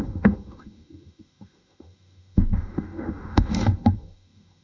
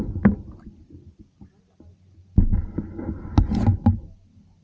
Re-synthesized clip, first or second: first